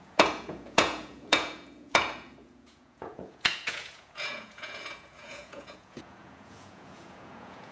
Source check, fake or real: fake